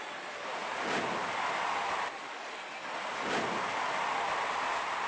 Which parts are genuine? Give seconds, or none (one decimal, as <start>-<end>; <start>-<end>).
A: 0.0-5.1